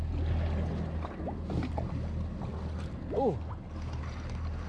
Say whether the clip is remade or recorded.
recorded